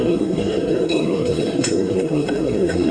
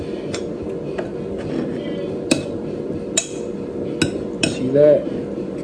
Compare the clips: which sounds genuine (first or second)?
second